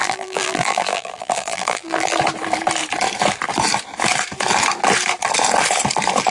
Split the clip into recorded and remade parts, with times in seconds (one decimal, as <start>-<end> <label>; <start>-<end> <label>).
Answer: 0.0-2.2 remade; 2.2-6.3 recorded